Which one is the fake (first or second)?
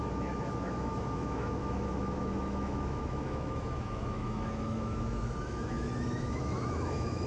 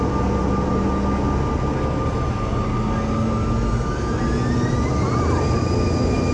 first